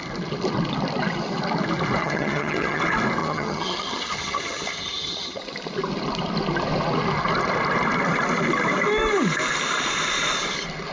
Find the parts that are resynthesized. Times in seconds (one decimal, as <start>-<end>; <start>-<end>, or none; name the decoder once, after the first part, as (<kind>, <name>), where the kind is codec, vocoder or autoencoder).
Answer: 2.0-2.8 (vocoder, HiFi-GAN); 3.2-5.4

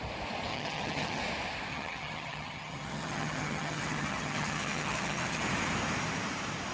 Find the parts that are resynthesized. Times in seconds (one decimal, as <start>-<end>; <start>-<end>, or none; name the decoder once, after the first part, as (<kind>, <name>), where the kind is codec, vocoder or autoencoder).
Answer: 0.5-1.2 (vocoder, HiFi-GAN); 1.7-5.4

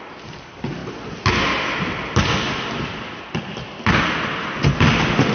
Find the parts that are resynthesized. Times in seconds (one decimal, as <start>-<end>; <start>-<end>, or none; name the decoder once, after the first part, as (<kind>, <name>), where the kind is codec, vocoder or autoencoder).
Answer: none